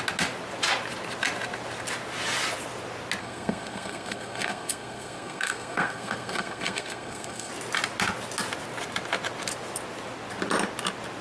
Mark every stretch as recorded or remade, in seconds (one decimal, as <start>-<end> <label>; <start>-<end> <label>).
0.0-3.2 recorded; 3.2-7.5 remade; 7.5-11.2 recorded